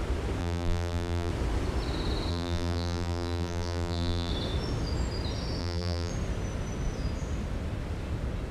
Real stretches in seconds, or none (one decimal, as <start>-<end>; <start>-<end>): 0.0-0.4; 1.3-2.3; 4.3-5.6; 6.1-8.5